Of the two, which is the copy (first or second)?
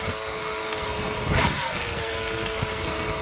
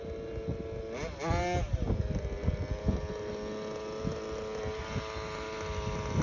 first